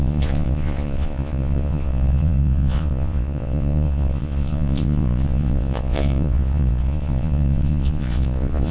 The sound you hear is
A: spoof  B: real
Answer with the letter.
A